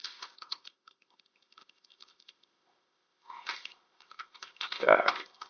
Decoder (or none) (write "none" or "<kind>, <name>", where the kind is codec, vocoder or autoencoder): codec, ZipCodec